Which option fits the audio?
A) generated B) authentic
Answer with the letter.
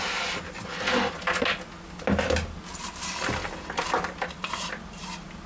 B